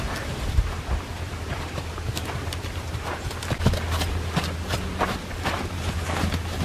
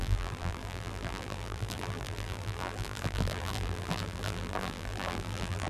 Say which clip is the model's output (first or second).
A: second